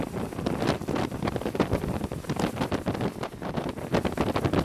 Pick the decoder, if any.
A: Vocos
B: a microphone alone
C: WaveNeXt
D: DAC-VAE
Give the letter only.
B